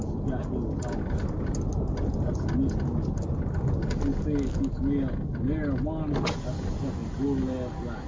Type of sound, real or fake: real